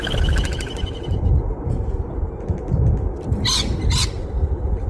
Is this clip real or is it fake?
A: real